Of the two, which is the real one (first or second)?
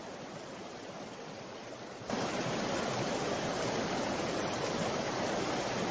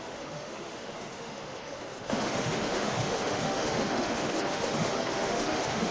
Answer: first